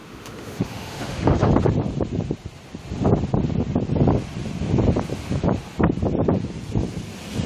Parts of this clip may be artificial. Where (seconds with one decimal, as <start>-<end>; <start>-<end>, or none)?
0.0-1.5